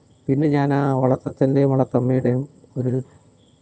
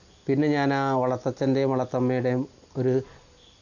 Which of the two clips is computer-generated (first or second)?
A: first